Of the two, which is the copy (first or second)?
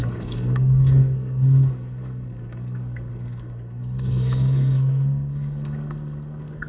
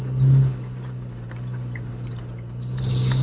first